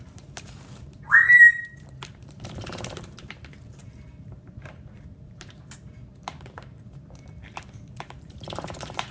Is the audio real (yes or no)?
no